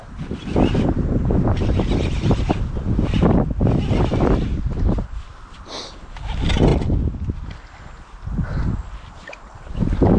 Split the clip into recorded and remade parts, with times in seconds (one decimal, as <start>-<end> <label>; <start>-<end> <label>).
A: 0.0-10.2 recorded